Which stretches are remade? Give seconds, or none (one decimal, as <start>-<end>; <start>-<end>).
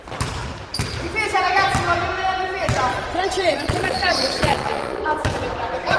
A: 2.9-5.0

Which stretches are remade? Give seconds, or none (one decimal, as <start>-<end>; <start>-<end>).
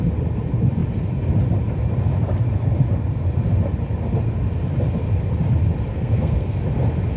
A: 5.9-6.6